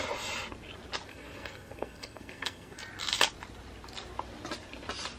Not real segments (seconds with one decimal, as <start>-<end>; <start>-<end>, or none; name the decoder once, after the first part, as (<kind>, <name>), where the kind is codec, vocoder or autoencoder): 1.1-2.8 (codec, SNAC)